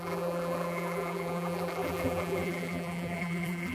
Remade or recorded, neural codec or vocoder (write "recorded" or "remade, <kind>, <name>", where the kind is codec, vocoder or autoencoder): remade, vocoder, BigVGAN v2